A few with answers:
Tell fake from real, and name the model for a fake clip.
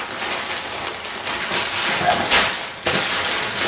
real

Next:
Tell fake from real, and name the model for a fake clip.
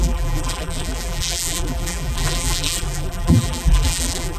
fake, vocoder, BigVGAN v2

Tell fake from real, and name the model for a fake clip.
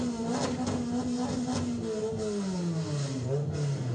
real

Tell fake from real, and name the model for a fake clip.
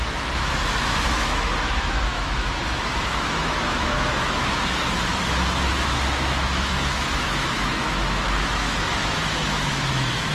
fake, autoencoder, DAC-VAE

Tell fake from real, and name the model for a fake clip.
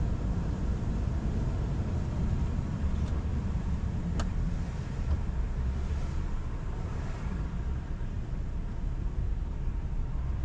fake, vocoder, BigVGAN v2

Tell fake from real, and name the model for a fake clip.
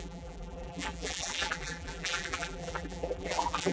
fake, vocoder, BigVGAN v2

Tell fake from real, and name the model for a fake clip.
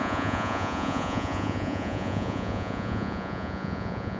fake, vocoder, Vocos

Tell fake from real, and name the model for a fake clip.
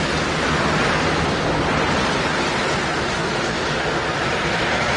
real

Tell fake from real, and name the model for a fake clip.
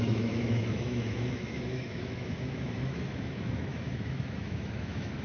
fake, autoencoder, DAC-VAE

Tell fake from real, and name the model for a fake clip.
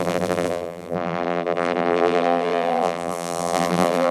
fake, vocoder, BigVGAN v2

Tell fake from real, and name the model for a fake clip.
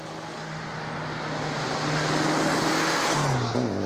real